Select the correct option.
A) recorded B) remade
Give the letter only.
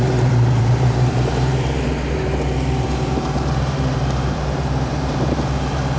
B